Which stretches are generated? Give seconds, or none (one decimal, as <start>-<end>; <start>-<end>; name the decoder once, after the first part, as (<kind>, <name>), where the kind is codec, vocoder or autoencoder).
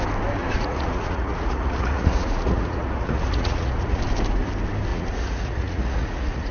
0.4-4.0 (vocoder, Vocos); 4.9-6.5